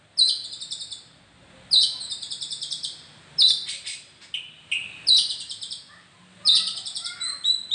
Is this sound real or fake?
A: real